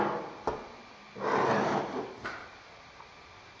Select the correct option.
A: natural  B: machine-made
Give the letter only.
A